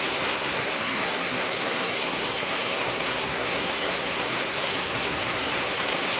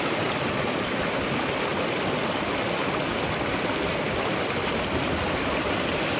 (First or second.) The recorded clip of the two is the second